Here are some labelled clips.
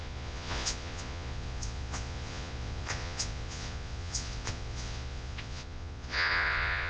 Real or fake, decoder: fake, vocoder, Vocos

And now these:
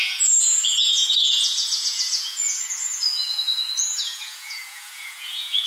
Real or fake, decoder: fake, vocoder, Vocos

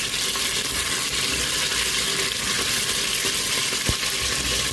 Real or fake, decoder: real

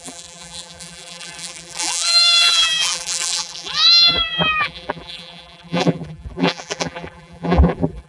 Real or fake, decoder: fake, vocoder, BigVGAN v2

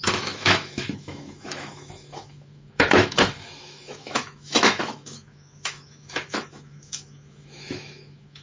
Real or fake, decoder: fake, autoencoder, DAC-VAE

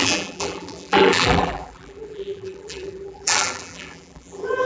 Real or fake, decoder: fake, vocoder, BigVGAN v2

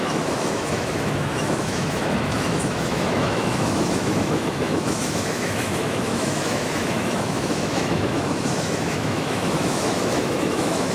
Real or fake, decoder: fake, autoencoder, DAC-VAE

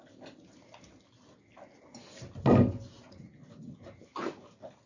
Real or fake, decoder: real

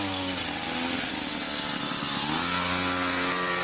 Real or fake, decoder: real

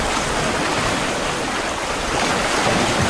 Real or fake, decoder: real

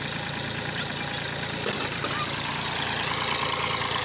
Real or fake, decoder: real